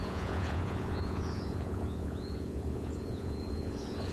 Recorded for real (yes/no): no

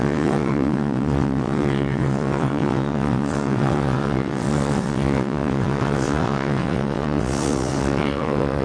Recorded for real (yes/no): no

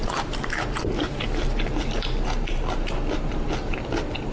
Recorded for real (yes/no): yes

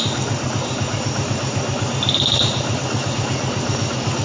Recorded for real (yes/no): yes